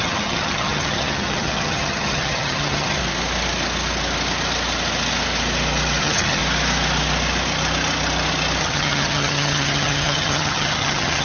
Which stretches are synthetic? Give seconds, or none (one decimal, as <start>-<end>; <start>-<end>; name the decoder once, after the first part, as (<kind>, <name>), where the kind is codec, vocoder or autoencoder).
0.0-3.0 (vocoder, HiFi-GAN); 6.0-6.4; 8.6-11.2